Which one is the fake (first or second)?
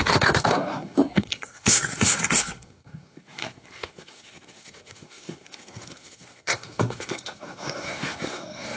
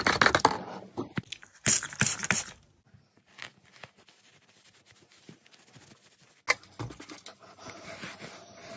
first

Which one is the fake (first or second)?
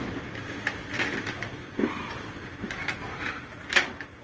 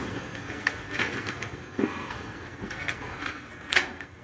second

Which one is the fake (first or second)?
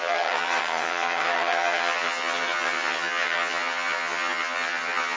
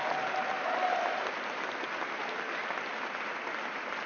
first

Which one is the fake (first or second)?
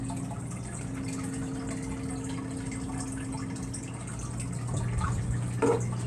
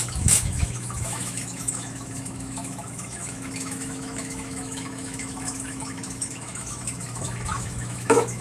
second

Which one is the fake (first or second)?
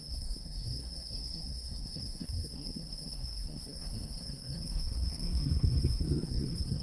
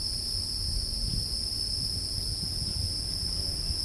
first